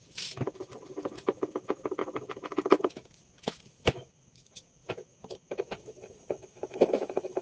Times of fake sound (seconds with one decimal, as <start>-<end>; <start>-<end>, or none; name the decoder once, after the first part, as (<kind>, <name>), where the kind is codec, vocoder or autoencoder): 0.0-7.4 (autoencoder, DAC-VAE)